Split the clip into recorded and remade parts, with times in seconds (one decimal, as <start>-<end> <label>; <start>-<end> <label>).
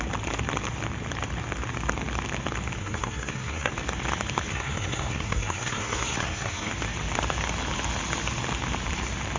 0.0-2.8 recorded; 2.8-3.7 remade; 3.7-4.5 recorded; 4.5-6.7 remade; 6.7-9.4 recorded